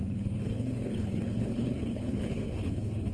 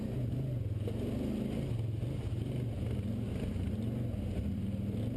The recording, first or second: second